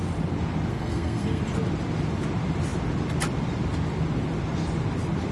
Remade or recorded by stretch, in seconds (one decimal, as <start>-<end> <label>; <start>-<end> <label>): 0.0-0.7 recorded; 0.7-1.4 remade; 1.4-5.3 recorded